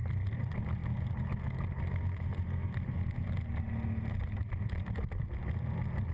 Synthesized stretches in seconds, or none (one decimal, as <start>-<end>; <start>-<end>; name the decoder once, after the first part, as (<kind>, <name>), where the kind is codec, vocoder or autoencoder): none